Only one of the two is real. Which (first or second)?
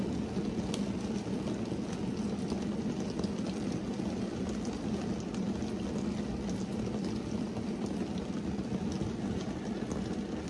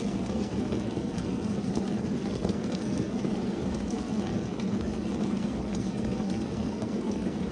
first